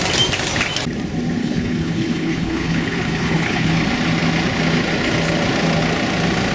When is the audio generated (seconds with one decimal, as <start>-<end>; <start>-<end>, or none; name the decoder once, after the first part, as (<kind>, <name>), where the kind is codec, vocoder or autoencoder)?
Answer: 1.4-3.7 (codec, HILCodec)